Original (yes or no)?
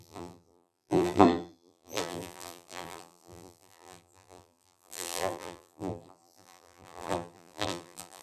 no